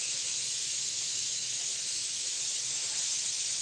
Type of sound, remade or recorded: remade